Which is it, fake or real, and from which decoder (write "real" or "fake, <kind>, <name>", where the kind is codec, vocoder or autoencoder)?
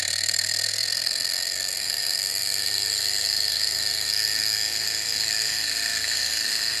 fake, codec, SNAC